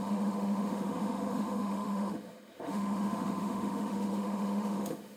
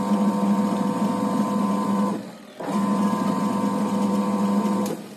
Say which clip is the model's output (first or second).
first